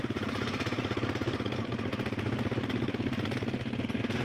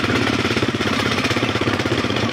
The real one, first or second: first